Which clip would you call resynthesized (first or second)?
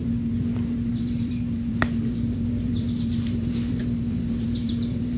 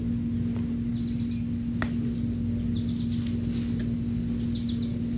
first